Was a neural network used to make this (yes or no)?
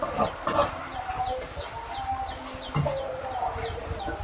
no